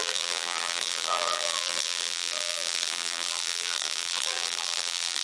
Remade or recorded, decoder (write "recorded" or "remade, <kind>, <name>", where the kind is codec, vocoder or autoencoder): remade, vocoder, BigVGAN v2